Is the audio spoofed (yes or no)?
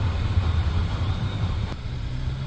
yes